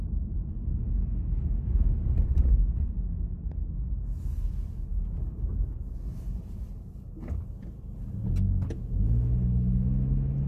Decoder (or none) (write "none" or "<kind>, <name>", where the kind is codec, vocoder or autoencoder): none